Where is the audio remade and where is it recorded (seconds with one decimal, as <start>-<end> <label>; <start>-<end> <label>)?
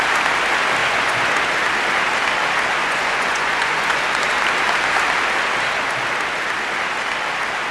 0.0-0.8 recorded; 0.8-1.3 remade; 1.3-2.8 recorded; 2.8-4.0 remade; 4.0-7.7 recorded